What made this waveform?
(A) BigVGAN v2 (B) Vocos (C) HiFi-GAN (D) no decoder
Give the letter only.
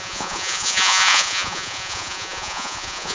B